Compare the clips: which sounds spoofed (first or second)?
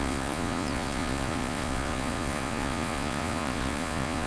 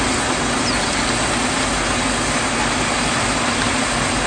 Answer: first